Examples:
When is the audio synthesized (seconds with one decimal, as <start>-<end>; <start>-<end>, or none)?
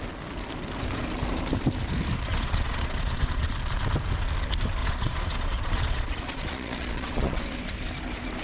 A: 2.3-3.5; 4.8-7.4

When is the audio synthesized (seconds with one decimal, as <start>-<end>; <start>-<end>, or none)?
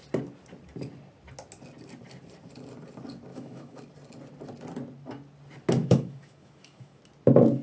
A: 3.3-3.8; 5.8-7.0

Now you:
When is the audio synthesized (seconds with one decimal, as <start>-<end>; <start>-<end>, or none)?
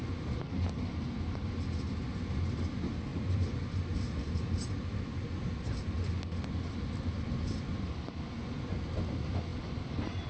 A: none